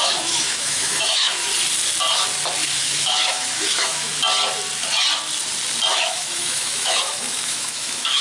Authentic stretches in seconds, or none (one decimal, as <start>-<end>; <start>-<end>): 1.5-2.8; 4.1-5.9